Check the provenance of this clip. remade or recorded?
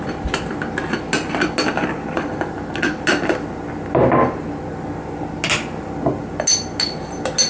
recorded